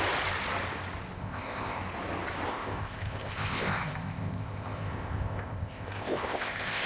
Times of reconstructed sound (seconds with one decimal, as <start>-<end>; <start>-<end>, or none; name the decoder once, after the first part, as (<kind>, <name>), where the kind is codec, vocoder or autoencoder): 1.2-1.8 (codec, ZipCodec); 2.5-6.9